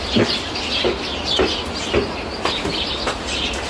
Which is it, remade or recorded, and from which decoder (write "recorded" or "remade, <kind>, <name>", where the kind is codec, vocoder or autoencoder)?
recorded